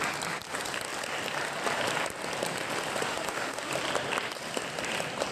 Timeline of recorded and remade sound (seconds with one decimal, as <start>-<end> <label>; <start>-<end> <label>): 0.0-3.1 recorded; 3.1-3.7 remade; 3.7-5.3 recorded